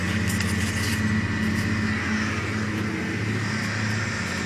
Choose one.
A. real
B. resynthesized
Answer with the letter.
A